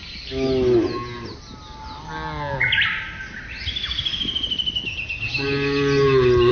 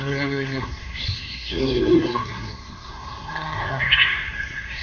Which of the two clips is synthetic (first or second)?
second